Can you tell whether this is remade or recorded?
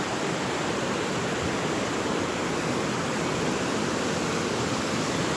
recorded